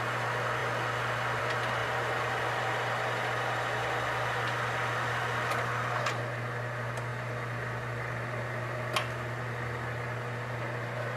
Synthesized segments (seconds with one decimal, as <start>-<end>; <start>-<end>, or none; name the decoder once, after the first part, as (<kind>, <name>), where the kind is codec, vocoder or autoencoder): none